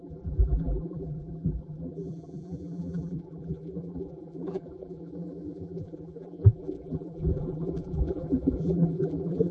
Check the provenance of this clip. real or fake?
fake